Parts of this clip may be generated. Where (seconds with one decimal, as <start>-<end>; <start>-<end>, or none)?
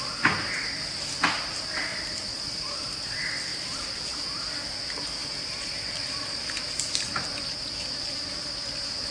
none